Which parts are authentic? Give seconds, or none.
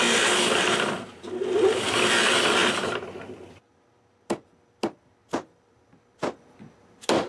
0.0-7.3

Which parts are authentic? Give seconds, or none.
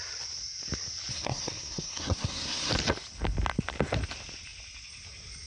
0.0-1.1; 2.7-5.5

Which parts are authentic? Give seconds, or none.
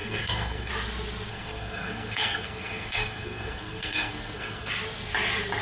0.7-1.3; 4.7-5.6